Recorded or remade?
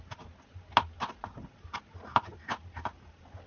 recorded